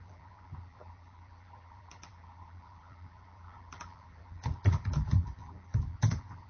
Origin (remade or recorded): remade